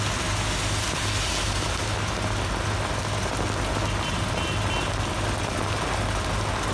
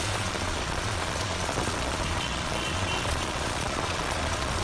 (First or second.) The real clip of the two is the first